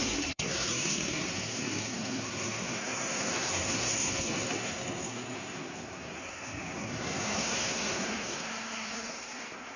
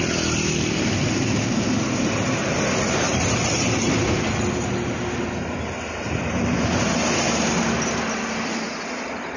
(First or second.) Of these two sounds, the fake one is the first